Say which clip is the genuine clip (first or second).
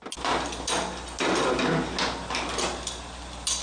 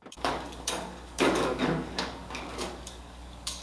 first